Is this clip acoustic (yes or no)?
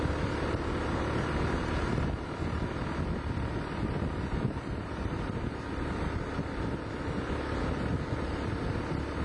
yes